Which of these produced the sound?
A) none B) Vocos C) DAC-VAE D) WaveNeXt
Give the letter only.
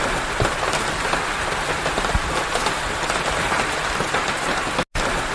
A